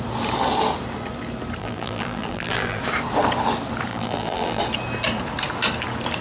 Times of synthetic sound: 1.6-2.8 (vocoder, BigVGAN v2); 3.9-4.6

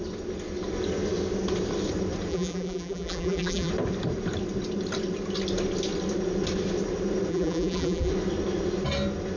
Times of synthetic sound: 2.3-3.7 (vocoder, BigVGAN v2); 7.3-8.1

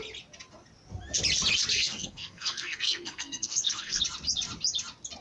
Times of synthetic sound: 1.7-4.0 (codec, SNAC)

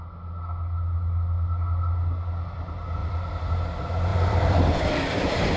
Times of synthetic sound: 3.0-3.5 (vocoder, BigVGAN v2); 4.1-5.6